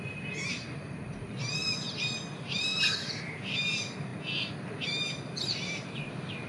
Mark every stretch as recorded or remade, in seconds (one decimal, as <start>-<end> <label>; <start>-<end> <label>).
0.0-1.6 remade; 1.6-2.3 recorded; 2.3-4.1 remade; 4.1-5.0 recorded; 5.0-6.5 remade